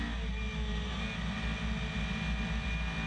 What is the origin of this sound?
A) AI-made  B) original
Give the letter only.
B